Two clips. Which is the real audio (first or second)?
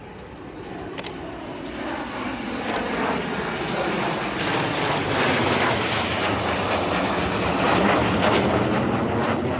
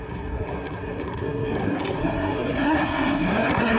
first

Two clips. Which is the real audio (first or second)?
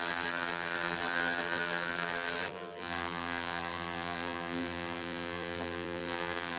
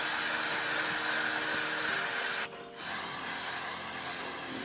second